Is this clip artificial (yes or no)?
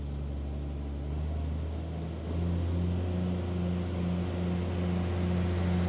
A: no